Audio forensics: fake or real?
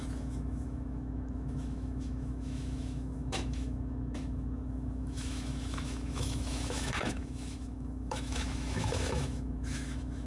fake